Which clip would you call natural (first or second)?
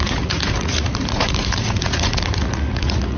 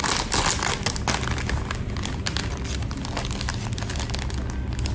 second